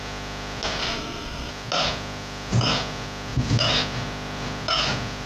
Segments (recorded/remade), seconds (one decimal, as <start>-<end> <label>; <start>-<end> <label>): 0.0-0.8 recorded; 0.8-1.5 remade; 1.5-5.3 recorded